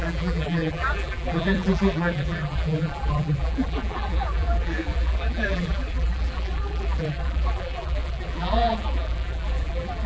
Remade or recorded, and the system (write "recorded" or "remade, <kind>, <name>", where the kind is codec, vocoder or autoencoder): remade, vocoder, BigVGAN v2